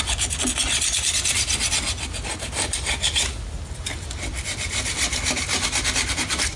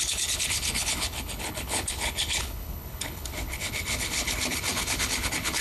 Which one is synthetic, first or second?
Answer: second